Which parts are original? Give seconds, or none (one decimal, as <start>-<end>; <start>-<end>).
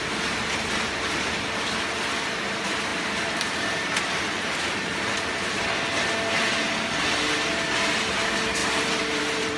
0.0-2.9; 5.6-8.6